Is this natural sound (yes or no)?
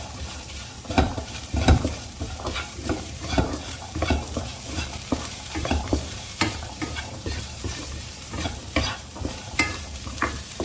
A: no